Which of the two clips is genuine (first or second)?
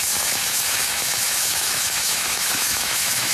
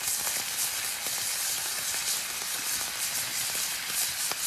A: second